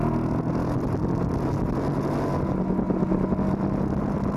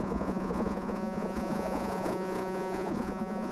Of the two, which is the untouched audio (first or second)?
first